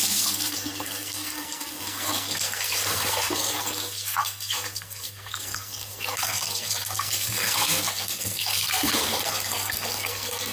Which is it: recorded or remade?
remade